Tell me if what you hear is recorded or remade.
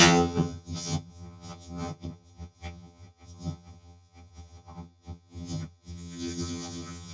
remade